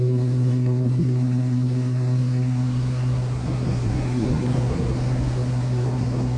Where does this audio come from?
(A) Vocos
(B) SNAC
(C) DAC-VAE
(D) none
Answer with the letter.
B